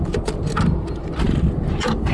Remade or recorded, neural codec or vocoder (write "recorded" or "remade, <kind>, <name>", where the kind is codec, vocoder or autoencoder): recorded